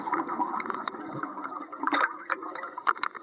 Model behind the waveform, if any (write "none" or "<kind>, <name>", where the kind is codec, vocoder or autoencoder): vocoder, Vocos